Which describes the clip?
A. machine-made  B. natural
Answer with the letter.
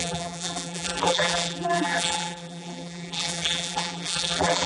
A